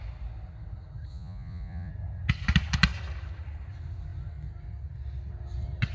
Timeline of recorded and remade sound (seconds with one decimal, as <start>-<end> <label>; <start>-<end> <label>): 0.0-1.1 recorded; 1.1-1.9 remade; 1.9-5.9 recorded